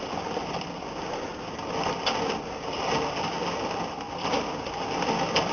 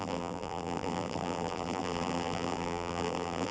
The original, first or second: first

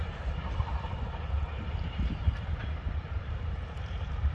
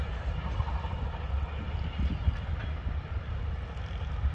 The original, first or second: second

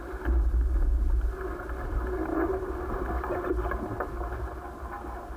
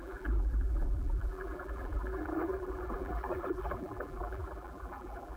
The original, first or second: first